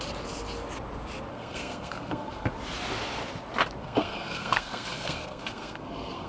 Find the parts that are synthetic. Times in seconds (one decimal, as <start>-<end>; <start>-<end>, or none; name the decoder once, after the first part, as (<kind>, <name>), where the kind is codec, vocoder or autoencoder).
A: 1.3-2.5 (codec, SNAC); 3.8-6.3